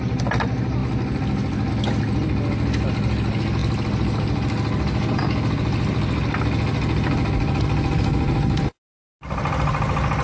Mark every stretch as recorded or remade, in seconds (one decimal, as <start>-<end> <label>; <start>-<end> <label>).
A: 0.0-10.2 recorded